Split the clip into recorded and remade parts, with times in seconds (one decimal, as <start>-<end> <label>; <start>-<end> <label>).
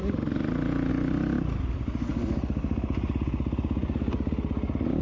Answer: 0.0-5.0 recorded